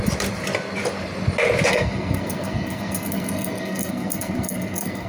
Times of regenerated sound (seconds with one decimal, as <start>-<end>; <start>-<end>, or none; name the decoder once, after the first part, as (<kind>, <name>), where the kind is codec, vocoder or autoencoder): 1.7-5.1 (codec, SNAC)